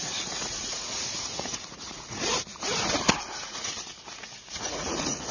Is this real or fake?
fake